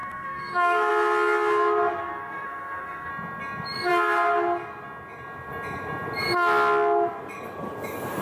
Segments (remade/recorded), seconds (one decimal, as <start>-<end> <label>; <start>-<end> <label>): 0.0-0.9 remade; 0.9-2.0 recorded; 2.0-3.1 remade; 3.1-8.2 recorded